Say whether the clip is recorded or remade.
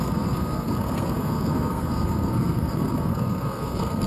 remade